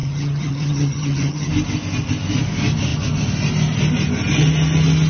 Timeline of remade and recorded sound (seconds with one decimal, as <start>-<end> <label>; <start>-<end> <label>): 0.0-1.5 remade; 1.5-5.1 recorded